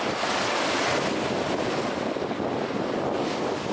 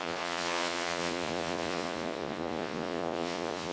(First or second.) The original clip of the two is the first